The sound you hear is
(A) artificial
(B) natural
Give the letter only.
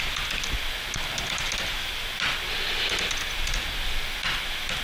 B